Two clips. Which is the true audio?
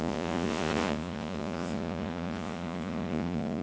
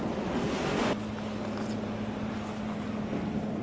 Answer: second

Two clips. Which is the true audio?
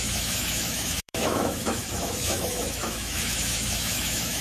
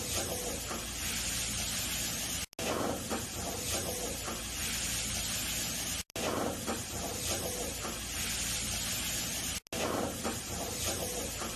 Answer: second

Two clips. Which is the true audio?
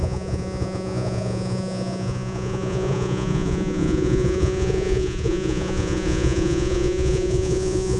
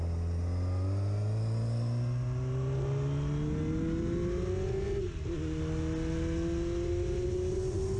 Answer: second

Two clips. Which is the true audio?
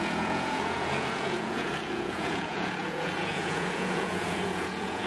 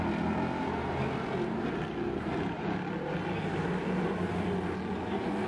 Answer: second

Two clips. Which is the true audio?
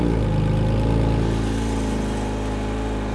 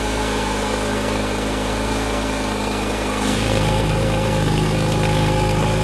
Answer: first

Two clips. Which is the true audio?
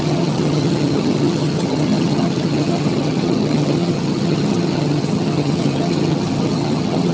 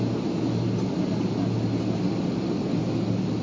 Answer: second